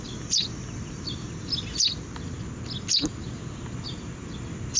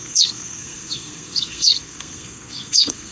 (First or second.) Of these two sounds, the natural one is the first